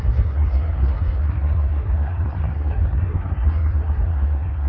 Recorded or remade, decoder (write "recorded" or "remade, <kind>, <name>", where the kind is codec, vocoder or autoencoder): remade, codec, SNAC